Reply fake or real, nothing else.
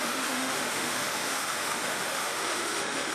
fake